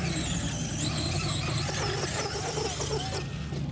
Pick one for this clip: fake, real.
real